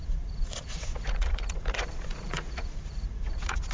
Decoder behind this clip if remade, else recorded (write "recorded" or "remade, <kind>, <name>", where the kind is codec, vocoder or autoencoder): remade, vocoder, Vocos